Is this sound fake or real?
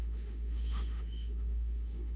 fake